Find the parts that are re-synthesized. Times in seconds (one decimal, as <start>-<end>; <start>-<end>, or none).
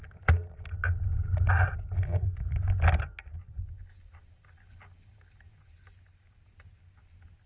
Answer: none